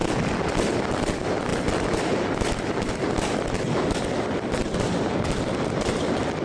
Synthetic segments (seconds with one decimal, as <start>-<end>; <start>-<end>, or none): none

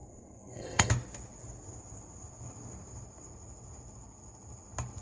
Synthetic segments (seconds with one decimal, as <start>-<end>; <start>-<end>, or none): 0.0-0.9

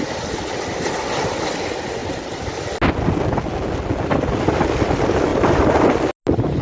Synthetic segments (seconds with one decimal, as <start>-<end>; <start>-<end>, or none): 2.0-2.6; 5.3-5.9

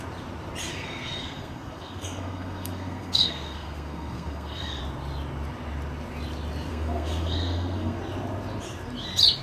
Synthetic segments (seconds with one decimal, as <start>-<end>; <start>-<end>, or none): 0.7-4.8; 6.7-8.0